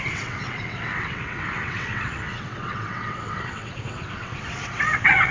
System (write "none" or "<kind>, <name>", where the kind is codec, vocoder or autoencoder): vocoder, WaveNeXt